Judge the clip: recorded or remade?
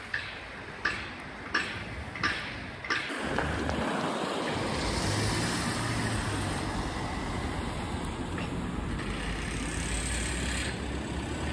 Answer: recorded